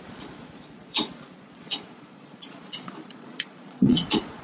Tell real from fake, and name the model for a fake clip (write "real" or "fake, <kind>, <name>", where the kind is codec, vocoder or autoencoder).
fake, vocoder, Vocos